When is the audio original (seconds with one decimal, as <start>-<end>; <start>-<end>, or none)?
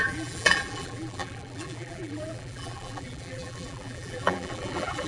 none